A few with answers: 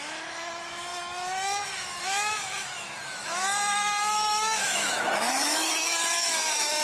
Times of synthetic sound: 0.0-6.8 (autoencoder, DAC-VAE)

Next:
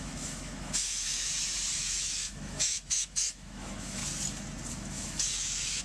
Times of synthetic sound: 0.0-1.3 (autoencoder, DAC-VAE); 1.8-4.0; 4.7-5.8

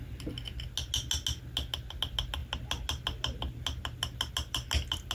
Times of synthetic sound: none

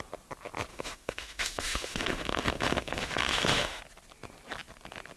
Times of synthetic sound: 0.7-3.8 (autoencoder, DAC-VAE)

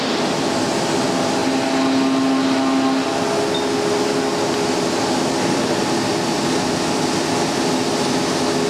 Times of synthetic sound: none

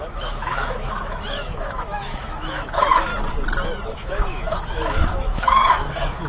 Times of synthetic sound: 0.0-3.1 (autoencoder, DAC-VAE); 3.9-6.3